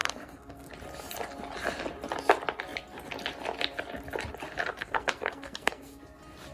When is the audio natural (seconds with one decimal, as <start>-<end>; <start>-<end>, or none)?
0.7-4.7; 6.0-6.5